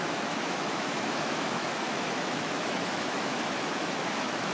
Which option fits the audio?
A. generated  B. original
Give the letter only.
A